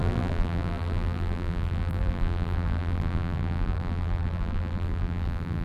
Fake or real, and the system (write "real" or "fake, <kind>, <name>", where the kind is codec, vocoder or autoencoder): fake, vocoder, BigVGAN v2